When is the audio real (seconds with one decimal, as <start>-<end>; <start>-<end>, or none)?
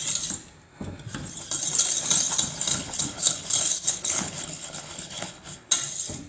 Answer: 0.0-2.7; 5.7-6.3